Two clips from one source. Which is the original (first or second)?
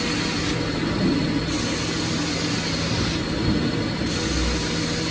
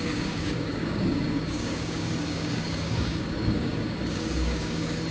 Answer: first